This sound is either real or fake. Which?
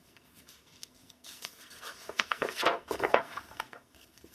fake